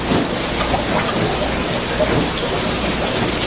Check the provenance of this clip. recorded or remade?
recorded